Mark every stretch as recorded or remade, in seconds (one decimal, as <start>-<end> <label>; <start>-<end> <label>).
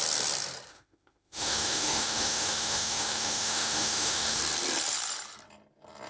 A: 0.0-0.7 recorded; 0.7-4.4 remade; 4.4-6.1 recorded